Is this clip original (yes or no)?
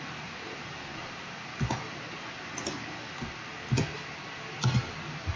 yes